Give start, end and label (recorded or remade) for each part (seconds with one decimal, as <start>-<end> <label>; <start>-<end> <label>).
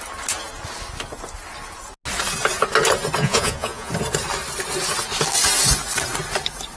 0.0-3.2 recorded; 3.2-3.9 remade; 3.9-6.8 recorded